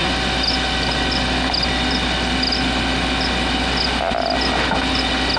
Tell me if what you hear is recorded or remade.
recorded